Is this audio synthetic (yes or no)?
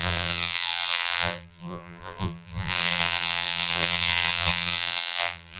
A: yes